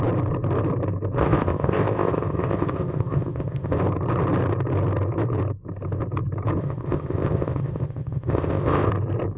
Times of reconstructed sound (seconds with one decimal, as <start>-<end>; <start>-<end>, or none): 1.2-3.8; 6.6-8.9